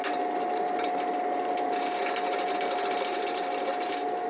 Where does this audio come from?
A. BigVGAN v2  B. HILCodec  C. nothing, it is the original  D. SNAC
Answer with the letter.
C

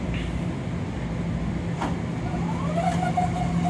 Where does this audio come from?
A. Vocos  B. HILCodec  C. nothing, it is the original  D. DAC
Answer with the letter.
C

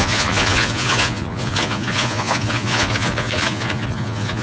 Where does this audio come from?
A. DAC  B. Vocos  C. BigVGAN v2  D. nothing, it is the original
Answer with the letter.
B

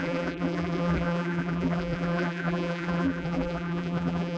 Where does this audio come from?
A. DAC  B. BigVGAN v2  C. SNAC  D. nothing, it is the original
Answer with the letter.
B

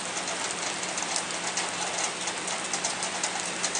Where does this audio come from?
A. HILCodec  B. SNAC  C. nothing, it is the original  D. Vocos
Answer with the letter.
C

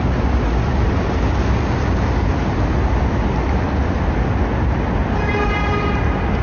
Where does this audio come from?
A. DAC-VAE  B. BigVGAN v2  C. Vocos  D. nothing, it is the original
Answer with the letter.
D